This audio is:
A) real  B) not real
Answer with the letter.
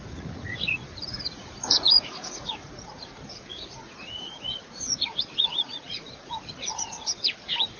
B